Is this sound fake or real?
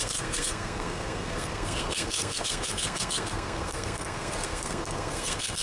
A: fake